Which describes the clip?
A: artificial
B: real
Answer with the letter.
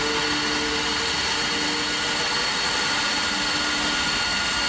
B